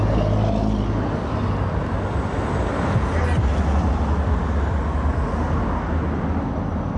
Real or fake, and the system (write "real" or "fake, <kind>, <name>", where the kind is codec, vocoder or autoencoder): real